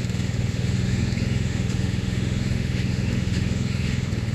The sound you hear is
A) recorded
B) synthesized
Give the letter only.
B